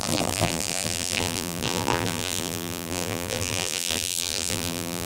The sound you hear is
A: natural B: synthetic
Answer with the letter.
B